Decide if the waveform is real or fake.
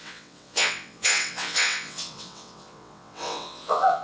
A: fake